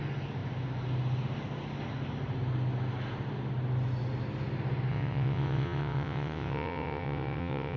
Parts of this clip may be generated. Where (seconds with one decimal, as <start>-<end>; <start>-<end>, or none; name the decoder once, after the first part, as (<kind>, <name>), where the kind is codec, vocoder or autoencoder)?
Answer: 4.9-7.8 (vocoder, WaveNeXt)

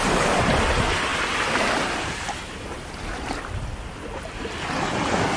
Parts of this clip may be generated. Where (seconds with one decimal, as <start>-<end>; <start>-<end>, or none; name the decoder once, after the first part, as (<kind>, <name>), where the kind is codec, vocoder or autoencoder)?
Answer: none

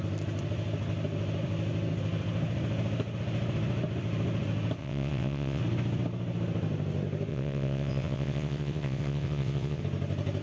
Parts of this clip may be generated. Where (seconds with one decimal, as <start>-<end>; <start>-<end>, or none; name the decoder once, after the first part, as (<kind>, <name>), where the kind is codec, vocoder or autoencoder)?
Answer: 4.8-5.6 (vocoder, WaveNeXt); 7.3-9.8

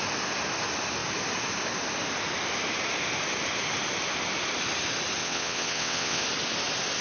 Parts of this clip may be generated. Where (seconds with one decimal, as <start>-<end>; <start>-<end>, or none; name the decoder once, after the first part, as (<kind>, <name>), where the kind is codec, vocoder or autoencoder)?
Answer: 5.2-6.2 (vocoder, WaveNeXt)

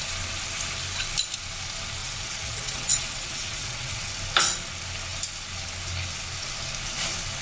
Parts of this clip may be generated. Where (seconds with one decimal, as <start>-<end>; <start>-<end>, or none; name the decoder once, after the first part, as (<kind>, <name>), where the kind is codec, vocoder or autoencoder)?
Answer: 2.0-4.1 (vocoder, WaveNeXt)

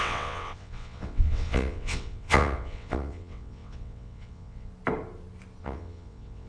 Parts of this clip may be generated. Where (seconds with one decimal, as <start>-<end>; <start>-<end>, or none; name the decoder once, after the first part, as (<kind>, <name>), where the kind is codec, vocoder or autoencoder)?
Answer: 0.0-4.7 (vocoder, WaveNeXt); 5.6-6.5

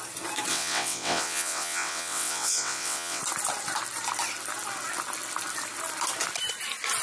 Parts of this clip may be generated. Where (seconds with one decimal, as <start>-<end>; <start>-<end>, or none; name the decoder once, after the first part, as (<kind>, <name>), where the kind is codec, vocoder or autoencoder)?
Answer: 0.5-3.2 (vocoder, WaveNeXt)

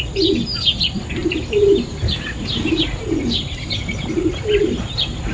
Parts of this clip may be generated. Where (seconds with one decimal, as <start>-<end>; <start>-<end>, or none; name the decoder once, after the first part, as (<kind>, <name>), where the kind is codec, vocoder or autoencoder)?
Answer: none